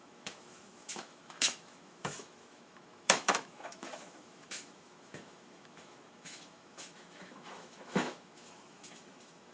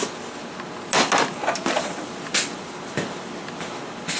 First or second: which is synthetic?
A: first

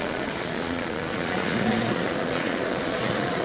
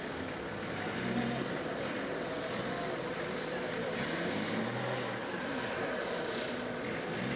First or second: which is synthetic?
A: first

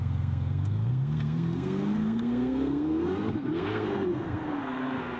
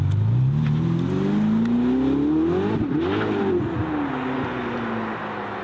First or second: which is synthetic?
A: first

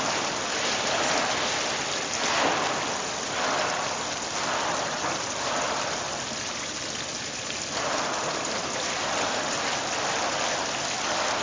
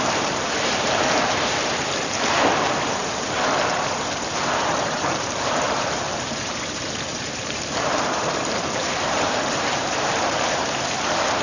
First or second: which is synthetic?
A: second